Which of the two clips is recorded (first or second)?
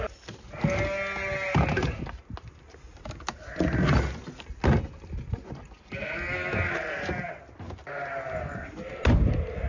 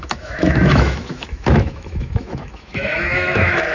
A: first